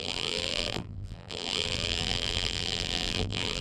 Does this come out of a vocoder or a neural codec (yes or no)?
yes